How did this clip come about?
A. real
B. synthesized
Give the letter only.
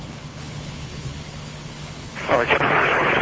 B